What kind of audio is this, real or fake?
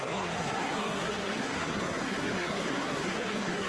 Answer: fake